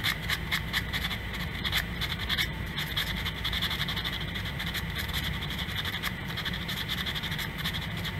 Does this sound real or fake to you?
fake